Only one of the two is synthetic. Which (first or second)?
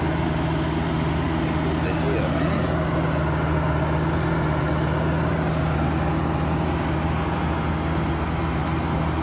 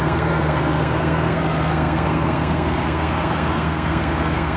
second